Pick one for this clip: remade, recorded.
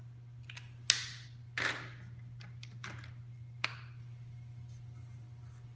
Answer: recorded